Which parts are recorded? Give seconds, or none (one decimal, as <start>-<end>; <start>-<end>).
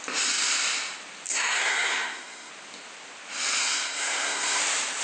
0.0-1.3; 2.5-3.6; 4.6-5.0